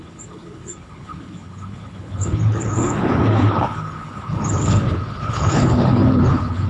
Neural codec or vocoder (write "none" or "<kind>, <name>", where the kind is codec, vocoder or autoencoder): codec, HILCodec